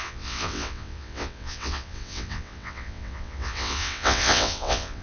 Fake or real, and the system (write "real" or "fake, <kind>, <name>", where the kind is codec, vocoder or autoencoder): fake, vocoder, WaveNeXt